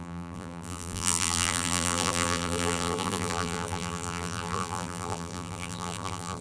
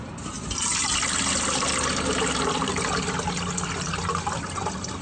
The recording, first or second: second